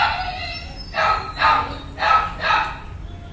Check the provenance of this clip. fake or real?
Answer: real